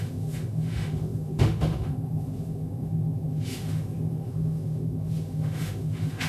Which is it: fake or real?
fake